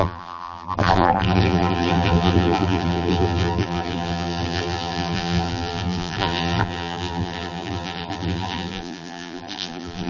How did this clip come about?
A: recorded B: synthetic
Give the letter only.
B